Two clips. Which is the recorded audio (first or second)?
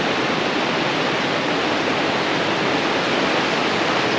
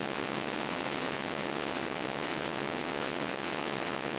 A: first